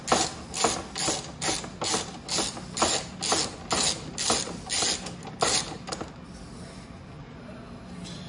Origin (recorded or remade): recorded